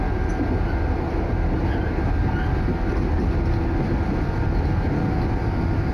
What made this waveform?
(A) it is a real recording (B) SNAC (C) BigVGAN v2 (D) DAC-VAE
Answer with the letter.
A